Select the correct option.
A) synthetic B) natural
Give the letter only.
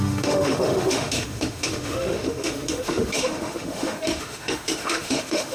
A